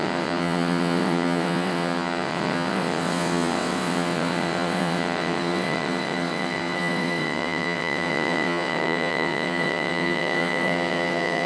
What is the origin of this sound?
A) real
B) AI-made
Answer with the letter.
B